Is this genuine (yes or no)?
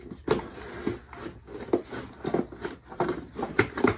yes